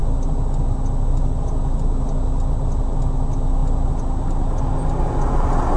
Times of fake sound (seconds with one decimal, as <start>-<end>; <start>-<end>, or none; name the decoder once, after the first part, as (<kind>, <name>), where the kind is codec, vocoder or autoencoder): none